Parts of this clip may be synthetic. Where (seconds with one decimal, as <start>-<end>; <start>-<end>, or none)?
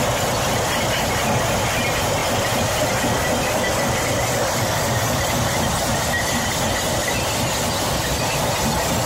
none